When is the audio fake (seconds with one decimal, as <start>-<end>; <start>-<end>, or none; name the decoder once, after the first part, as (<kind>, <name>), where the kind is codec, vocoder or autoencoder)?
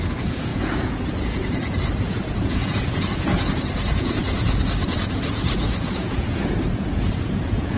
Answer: 0.0-7.8 (vocoder, Vocos)